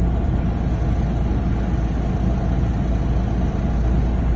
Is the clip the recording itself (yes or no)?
yes